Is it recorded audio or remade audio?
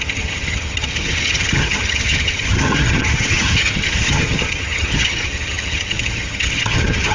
remade